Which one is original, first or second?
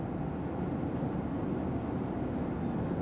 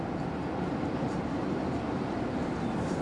first